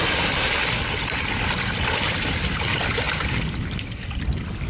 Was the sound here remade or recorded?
remade